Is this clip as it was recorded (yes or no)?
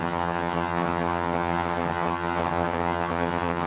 no